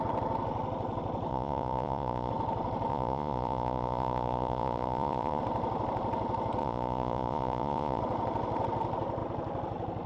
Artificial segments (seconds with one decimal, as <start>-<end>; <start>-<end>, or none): 1.3-2.3; 2.9-5.4; 6.6-8.0